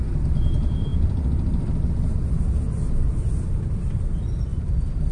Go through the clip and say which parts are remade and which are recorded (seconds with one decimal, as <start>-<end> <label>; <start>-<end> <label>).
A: 0.0-5.1 recorded